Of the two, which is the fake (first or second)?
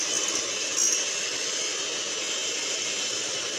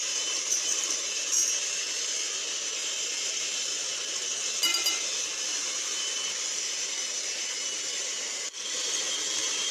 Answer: second